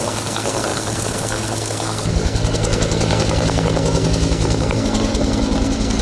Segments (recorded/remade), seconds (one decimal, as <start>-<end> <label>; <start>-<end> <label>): 0.0-6.0 remade